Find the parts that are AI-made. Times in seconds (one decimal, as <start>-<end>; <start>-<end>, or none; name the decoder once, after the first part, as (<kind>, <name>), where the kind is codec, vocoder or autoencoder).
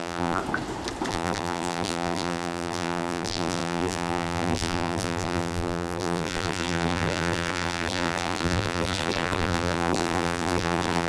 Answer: 0.0-0.4 (vocoder, BigVGAN v2); 1.1-11.1